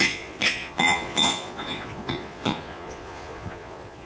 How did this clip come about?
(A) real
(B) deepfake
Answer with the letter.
B